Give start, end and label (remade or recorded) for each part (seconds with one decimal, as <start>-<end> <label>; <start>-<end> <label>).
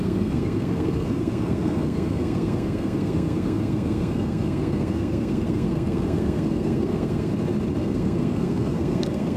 0.0-7.3 remade; 7.3-7.8 recorded; 7.8-9.4 remade